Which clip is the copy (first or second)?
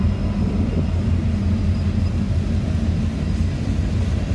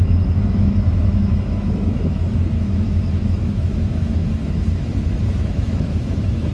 second